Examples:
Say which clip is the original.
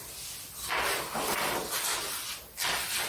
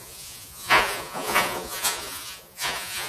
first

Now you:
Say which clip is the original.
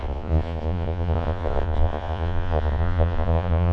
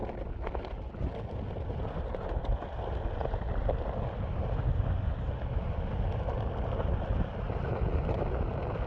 second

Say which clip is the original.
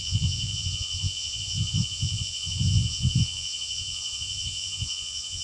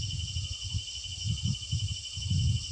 second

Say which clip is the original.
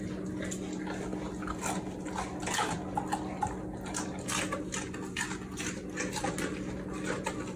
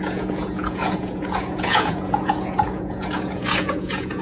first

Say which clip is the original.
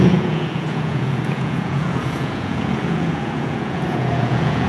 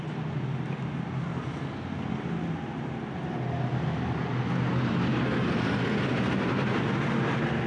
second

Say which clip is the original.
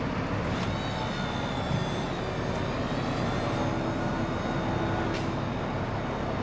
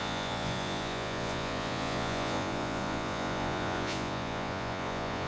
first